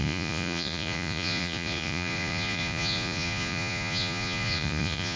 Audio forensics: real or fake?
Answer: fake